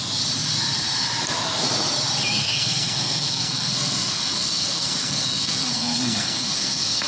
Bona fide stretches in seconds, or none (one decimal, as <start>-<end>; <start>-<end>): 0.0-2.4